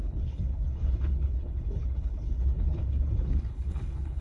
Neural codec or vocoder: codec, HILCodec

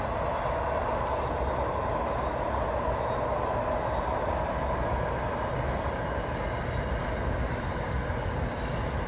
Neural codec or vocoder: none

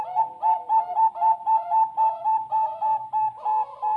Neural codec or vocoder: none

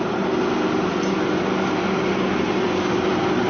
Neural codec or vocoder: none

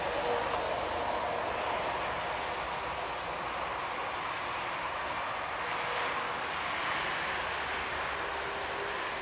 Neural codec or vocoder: none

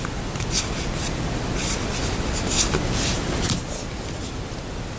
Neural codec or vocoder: none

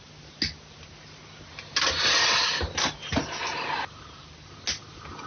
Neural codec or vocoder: none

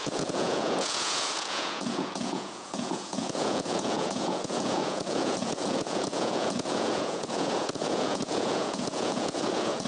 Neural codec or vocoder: vocoder, Vocos